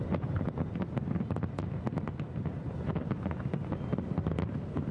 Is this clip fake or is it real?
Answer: real